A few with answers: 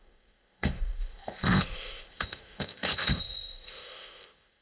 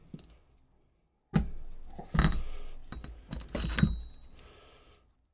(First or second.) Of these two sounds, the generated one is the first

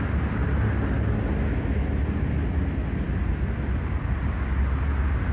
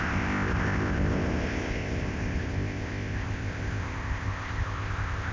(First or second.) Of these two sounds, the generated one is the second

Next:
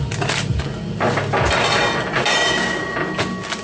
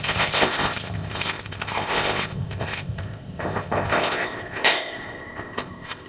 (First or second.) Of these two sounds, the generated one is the second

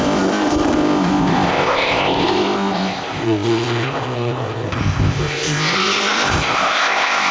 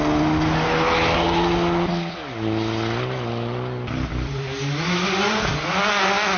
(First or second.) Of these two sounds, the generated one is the first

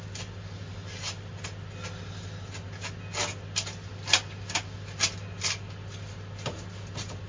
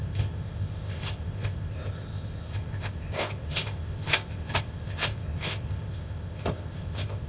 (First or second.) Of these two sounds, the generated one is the second